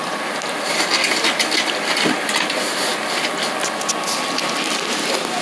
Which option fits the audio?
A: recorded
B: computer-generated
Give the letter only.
A